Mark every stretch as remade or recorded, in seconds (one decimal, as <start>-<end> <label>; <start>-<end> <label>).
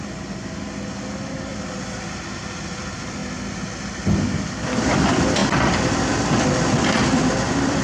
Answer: 0.0-1.5 remade; 1.5-2.4 recorded; 2.4-3.2 remade; 3.2-3.7 recorded; 3.7-7.8 remade